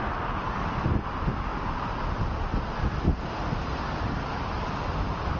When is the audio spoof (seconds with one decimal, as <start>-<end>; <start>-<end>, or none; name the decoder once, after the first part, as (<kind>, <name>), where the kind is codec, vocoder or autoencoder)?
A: 0.0-1.5 (vocoder, BigVGAN v2); 4.2-5.4

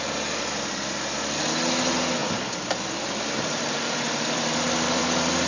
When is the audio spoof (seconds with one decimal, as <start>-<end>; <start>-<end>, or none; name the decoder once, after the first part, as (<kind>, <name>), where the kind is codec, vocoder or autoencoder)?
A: 2.2-5.0 (vocoder, BigVGAN v2)

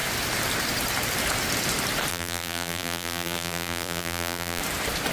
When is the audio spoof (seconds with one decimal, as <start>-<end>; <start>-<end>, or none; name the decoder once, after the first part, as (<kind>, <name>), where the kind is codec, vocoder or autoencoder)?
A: 2.1-4.6 (vocoder, BigVGAN v2)

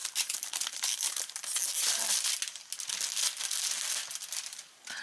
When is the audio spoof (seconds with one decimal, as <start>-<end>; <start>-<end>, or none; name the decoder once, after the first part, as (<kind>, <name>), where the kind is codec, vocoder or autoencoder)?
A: 0.0-1.4 (vocoder, BigVGAN v2); 4.4-5.0

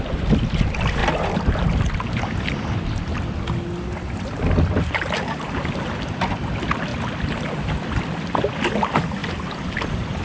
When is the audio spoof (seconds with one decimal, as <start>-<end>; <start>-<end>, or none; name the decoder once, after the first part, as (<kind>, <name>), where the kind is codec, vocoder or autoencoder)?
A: 0.0-1.0 (vocoder, BigVGAN v2); 4.7-6.9; 7.4-9.2